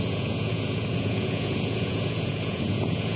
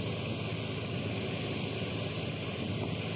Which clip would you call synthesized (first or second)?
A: first